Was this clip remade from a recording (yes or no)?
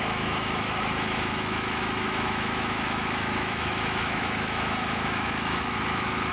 yes